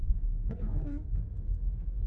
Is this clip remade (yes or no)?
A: yes